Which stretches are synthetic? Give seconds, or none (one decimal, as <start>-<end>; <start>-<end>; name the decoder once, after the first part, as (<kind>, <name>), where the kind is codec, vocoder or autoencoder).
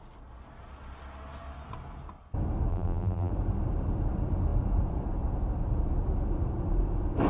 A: 2.7-3.3 (vocoder, BigVGAN v2)